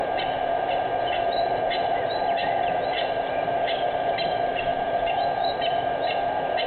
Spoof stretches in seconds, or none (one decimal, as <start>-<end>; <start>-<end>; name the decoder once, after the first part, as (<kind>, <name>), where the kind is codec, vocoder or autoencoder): 0.0-6.7 (vocoder, BigVGAN v2)

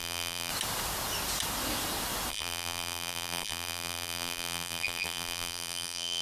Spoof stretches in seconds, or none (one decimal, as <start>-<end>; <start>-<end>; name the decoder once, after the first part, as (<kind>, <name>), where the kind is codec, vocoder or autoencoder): 0.0-0.5 (vocoder, BigVGAN v2); 2.3-6.2

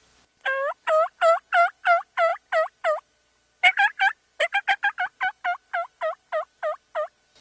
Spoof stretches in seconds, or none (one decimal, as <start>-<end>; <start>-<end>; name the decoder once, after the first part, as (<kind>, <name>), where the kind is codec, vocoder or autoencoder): none

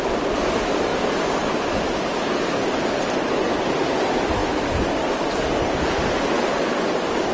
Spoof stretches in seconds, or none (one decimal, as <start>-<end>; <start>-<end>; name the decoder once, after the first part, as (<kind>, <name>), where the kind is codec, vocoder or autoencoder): 4.4-5.4 (vocoder, BigVGAN v2)

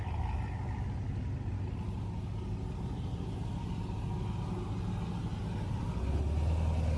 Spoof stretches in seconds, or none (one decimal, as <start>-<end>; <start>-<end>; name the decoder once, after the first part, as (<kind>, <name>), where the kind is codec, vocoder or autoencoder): 5.3-5.8 (vocoder, BigVGAN v2)